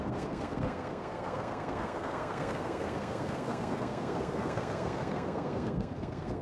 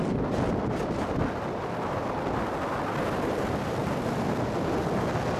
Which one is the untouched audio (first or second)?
second